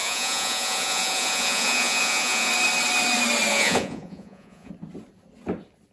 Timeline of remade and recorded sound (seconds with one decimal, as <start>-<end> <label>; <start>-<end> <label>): 0.0-2.5 remade; 2.5-3.5 recorded; 3.5-4.7 remade; 4.7-5.9 recorded